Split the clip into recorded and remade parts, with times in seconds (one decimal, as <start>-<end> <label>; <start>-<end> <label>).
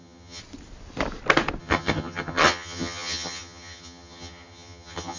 0.0-0.4 remade; 0.4-1.6 recorded; 1.6-5.2 remade